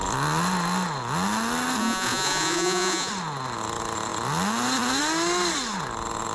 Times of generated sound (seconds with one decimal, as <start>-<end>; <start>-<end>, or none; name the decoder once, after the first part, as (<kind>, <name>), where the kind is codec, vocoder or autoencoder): 1.8-3.1 (vocoder, Vocos)